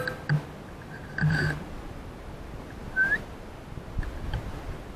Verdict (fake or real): real